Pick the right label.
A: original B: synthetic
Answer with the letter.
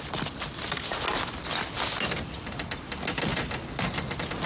A